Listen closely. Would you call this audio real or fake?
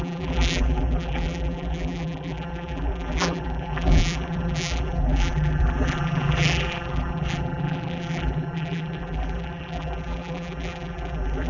fake